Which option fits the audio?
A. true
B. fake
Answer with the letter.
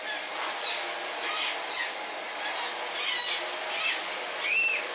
A